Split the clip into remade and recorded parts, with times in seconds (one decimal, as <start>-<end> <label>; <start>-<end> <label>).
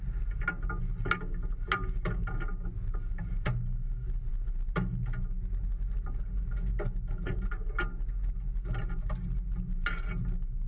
0.0-10.7 recorded